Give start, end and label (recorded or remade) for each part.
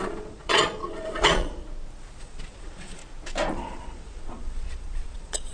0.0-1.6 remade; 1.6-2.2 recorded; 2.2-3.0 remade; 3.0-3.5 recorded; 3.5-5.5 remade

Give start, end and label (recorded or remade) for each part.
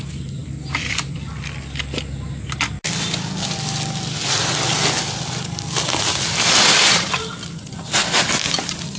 0.0-9.0 recorded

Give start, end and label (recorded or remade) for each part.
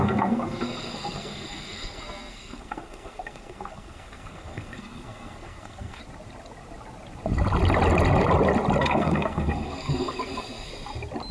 0.0-6.0 remade; 6.0-8.8 recorded; 8.8-10.7 remade; 10.7-11.3 recorded